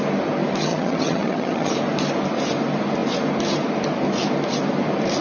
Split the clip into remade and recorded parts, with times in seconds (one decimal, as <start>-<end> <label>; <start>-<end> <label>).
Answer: 0.0-0.6 recorded; 0.6-1.7 remade; 1.7-5.2 recorded